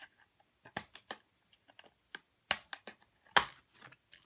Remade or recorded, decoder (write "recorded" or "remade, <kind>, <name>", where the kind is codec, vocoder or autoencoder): recorded